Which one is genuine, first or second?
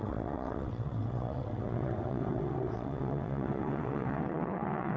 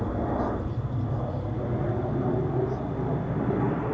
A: second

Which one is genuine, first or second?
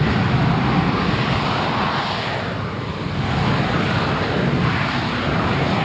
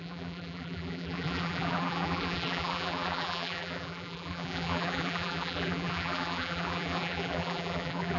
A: first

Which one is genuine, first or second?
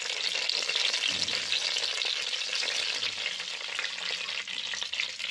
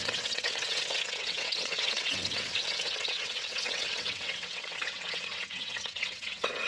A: first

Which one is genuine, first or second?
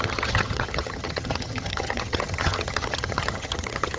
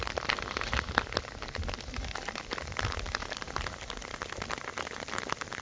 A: second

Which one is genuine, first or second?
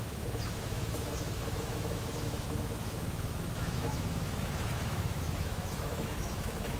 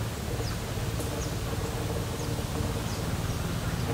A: second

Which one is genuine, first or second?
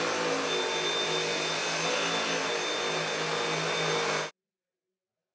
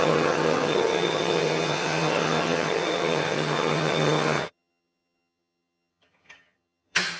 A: first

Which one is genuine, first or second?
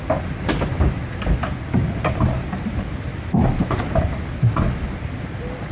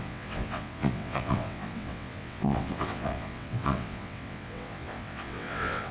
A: first